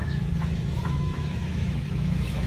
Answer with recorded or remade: remade